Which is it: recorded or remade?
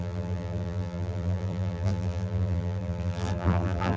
remade